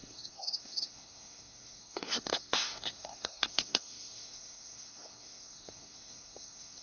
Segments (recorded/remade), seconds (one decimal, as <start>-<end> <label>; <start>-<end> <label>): 0.0-6.8 remade